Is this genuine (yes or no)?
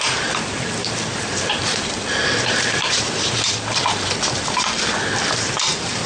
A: no